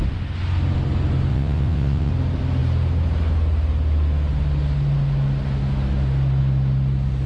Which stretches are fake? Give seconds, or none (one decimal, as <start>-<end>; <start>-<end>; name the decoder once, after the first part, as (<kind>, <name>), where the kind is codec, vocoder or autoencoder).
1.3-2.1 (vocoder, WaveNeXt)